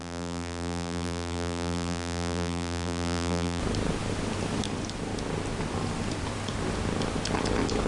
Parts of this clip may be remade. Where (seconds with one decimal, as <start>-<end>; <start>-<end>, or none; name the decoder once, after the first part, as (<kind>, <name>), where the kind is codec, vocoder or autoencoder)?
0.0-3.6 (vocoder, BigVGAN v2)